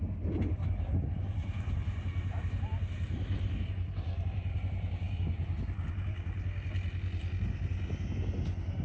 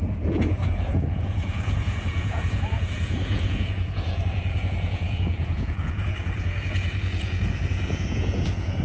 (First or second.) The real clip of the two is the first